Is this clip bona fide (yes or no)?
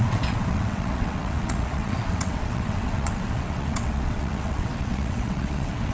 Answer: no